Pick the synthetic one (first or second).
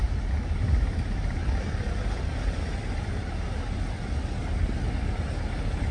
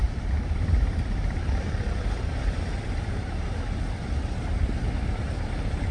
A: second